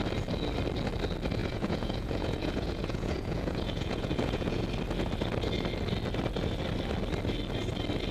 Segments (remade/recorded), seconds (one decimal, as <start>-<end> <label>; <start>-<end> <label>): 0.0-1.4 recorded; 1.4-4.6 remade; 4.6-8.1 recorded